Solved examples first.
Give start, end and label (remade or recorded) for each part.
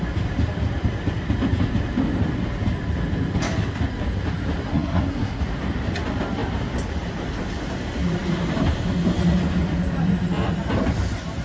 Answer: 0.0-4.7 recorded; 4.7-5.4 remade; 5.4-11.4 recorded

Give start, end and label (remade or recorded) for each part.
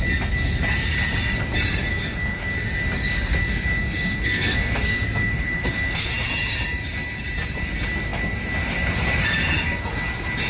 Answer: 0.0-1.9 recorded; 1.9-2.4 remade; 2.4-3.8 recorded; 3.8-6.1 remade; 6.1-10.5 recorded